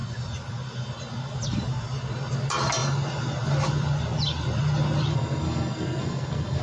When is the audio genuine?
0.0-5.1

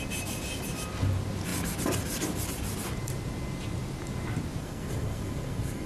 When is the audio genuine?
0.0-4.6

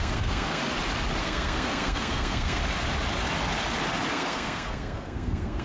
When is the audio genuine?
0.6-1.2; 2.6-4.1

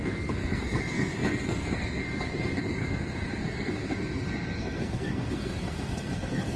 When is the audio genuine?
none

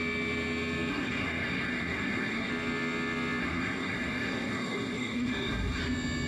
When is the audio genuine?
0.0-0.9; 2.5-3.4; 5.8-6.3

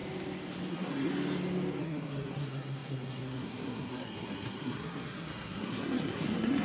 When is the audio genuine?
0.0-0.7; 1.1-1.8